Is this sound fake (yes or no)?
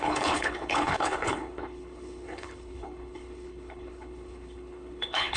yes